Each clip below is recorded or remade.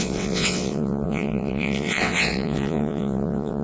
remade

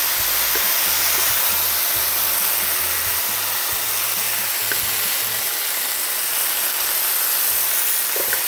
recorded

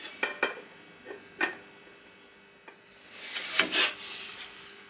recorded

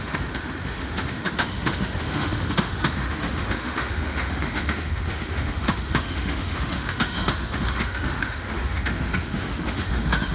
remade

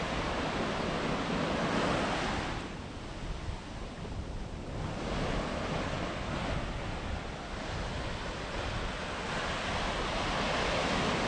recorded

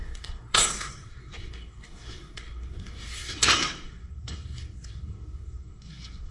remade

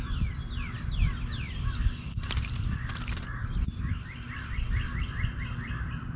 remade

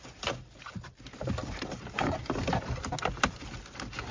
recorded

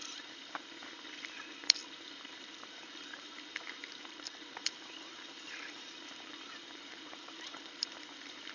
remade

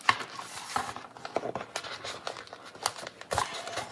recorded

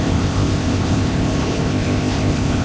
remade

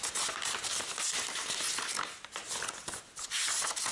recorded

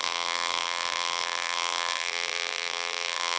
remade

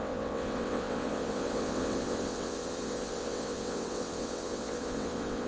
remade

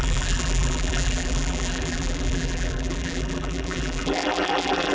remade